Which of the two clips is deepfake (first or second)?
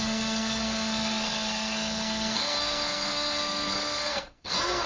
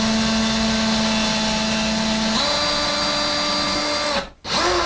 first